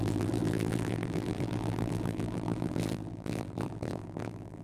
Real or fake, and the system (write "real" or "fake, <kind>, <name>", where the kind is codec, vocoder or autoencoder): fake, vocoder, BigVGAN v2